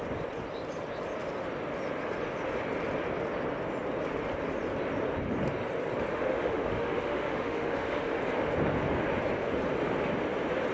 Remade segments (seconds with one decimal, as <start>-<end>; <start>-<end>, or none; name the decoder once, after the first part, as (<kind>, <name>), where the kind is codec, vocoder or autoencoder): 6.1-8.2 (autoencoder, DAC-VAE)